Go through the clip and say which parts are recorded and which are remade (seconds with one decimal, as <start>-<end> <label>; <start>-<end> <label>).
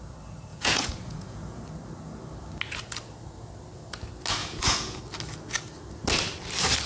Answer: 0.0-0.5 recorded; 0.5-1.6 remade; 1.6-4.4 recorded; 4.4-5.0 remade; 5.0-6.9 recorded